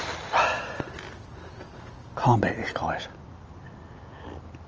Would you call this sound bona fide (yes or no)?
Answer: yes